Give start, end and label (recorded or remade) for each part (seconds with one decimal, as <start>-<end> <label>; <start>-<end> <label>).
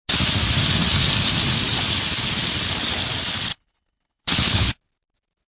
0.0-3.5 recorded; 3.5-4.7 remade; 4.7-5.5 recorded